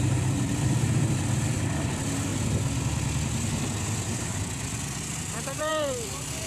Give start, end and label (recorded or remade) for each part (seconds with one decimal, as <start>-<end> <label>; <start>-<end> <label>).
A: 0.0-2.3 remade; 2.3-4.2 recorded; 4.2-6.5 remade